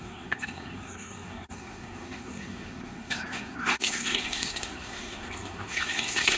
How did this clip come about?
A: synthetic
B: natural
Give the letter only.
A